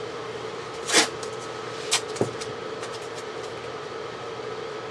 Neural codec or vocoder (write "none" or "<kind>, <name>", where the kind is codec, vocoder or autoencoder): none